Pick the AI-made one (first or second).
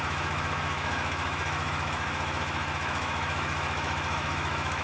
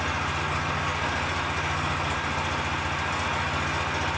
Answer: first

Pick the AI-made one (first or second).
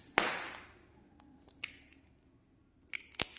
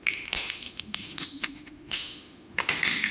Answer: second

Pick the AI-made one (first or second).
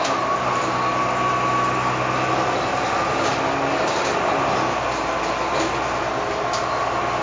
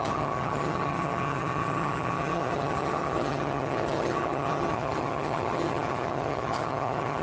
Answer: second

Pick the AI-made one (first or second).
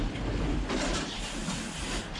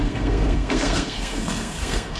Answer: second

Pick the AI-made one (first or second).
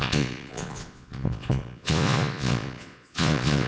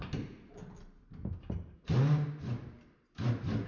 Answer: first